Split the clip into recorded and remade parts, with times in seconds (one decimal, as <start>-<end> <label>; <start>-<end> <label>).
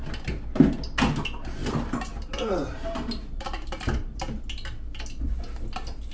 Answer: 0.0-1.6 recorded; 1.6-4.4 remade; 4.4-6.1 recorded